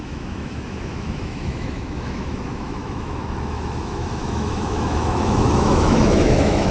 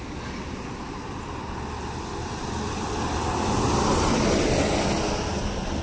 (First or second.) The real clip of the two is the second